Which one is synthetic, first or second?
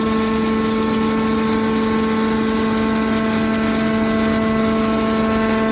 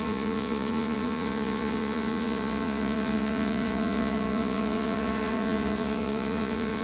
second